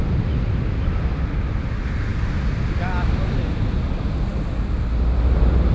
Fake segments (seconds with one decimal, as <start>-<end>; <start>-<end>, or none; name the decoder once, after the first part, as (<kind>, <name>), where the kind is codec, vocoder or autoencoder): none